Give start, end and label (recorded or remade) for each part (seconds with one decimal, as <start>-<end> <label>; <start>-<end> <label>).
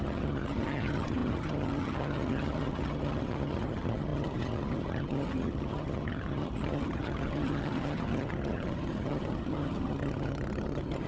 0.0-11.1 remade